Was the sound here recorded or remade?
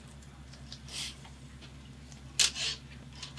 recorded